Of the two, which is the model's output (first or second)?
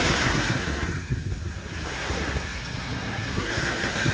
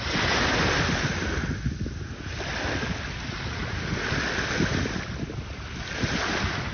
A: first